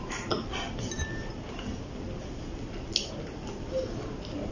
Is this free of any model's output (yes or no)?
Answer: yes